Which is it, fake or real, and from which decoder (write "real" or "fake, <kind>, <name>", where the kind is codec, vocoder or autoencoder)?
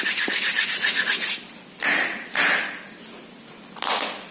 real